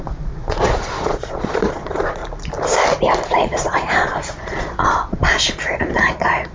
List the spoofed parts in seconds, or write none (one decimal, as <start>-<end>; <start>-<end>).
0.0-2.2; 3.2-6.5